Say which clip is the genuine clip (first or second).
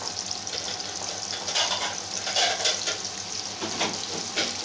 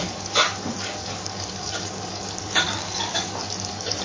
first